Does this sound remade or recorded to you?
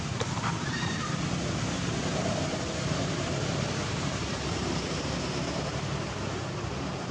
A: remade